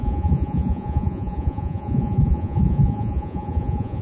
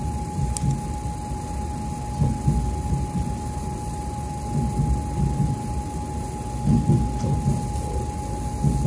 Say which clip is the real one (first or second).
second